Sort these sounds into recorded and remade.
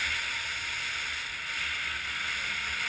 recorded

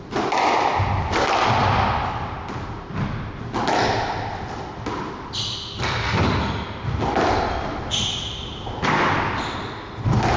recorded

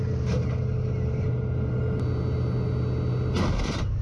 recorded